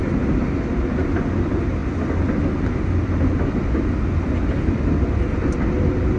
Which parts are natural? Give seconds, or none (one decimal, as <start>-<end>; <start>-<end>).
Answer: 0.0-6.2